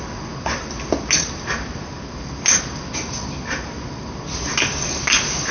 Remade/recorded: recorded